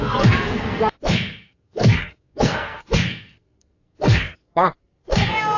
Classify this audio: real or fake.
fake